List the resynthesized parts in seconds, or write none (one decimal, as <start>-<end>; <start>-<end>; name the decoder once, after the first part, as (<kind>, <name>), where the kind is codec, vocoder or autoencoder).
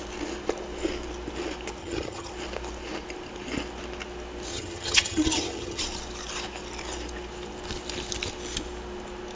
1.8-2.3 (vocoder, HiFi-GAN); 4.5-5.8